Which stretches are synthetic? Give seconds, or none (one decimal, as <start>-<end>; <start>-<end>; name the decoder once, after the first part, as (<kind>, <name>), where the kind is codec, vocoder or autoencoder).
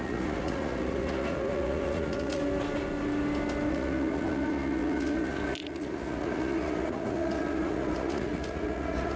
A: 0.0-2.4 (vocoder, Vocos); 3.7-9.2